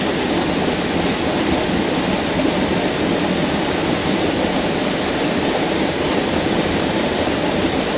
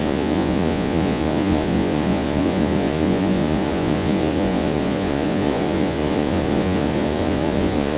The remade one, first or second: second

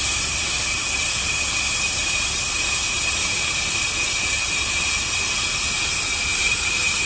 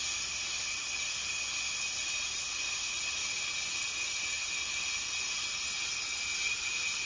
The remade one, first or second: first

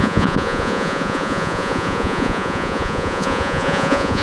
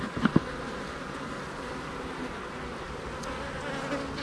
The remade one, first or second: first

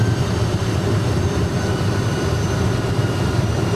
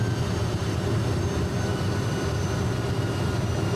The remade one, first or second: first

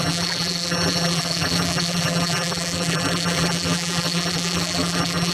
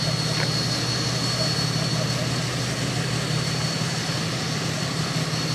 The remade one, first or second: first